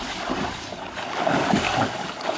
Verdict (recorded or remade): remade